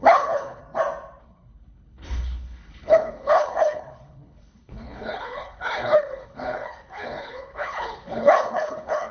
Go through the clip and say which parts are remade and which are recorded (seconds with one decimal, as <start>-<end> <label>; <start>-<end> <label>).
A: 0.0-0.6 remade; 0.6-1.2 recorded; 1.2-9.1 remade